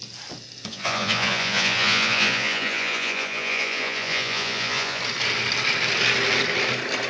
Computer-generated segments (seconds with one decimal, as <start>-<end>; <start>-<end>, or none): 0.7-5.0